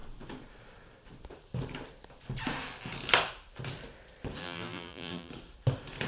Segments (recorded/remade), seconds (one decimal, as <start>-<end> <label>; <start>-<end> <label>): 0.0-4.4 recorded; 4.4-5.3 remade; 5.3-6.1 recorded